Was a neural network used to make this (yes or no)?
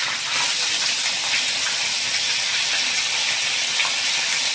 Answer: no